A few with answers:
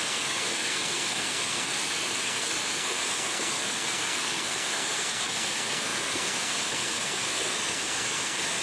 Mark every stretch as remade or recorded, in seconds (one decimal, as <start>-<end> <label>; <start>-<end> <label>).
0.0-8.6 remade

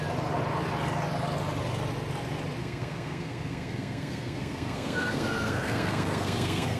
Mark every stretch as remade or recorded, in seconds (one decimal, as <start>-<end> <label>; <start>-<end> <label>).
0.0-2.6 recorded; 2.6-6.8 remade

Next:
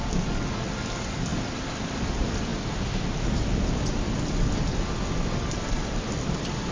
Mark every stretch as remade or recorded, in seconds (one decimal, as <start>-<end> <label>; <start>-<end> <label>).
0.0-6.7 recorded

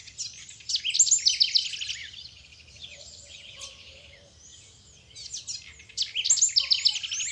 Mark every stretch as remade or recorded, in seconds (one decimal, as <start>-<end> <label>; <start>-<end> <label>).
0.0-7.3 recorded

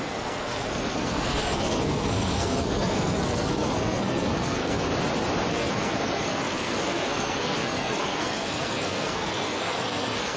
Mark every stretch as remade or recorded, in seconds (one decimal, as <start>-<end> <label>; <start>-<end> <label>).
0.0-4.9 remade; 4.9-5.5 recorded; 5.5-10.4 remade

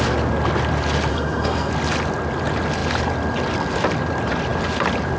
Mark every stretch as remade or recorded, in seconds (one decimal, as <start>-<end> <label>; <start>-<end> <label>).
0.0-1.1 recorded; 1.1-1.7 remade; 1.7-5.2 recorded

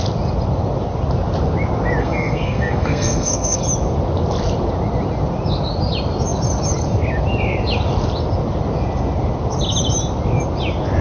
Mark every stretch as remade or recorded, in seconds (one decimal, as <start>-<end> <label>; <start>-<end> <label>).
0.0-2.0 recorded; 2.0-3.6 remade; 3.6-11.0 recorded

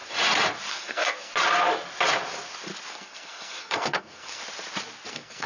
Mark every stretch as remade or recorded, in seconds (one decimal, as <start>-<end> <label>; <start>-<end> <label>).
0.0-0.7 recorded; 0.7-1.3 remade; 1.3-2.9 recorded; 2.9-4.4 remade; 4.4-5.1 recorded; 5.1-5.5 remade